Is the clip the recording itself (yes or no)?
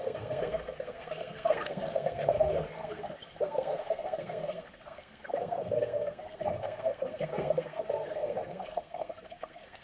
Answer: no